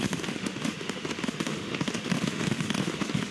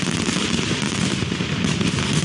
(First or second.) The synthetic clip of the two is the first